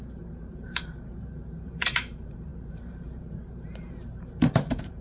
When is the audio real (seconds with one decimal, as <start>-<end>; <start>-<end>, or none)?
none

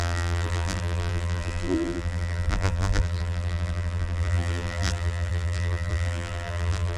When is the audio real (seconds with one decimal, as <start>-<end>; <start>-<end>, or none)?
none

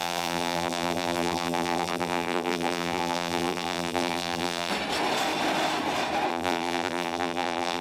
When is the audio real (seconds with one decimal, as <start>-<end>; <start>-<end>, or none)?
4.7-6.3